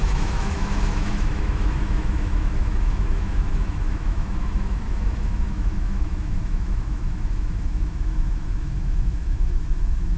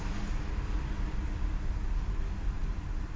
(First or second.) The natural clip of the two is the second